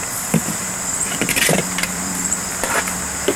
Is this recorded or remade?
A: remade